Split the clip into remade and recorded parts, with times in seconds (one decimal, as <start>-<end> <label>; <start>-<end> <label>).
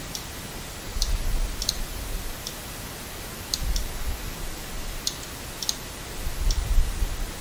0.0-0.9 recorded; 0.9-2.0 remade; 2.0-7.4 recorded